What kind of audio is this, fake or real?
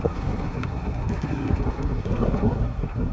fake